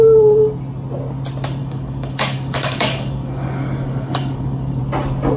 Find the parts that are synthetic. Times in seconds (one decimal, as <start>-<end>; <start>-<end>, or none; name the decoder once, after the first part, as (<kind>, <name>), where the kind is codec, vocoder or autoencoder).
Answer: 1.6-4.8 (codec, DAC)